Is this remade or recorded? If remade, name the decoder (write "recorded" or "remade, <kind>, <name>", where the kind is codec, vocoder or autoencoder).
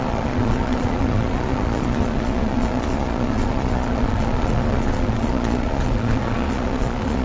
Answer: remade, vocoder, Vocos